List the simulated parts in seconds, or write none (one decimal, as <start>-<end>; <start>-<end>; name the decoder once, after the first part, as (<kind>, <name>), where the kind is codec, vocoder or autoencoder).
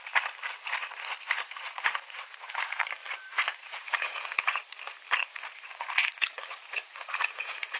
0.8-2.8 (vocoder, Vocos); 3.3-4.6; 5.2-7.8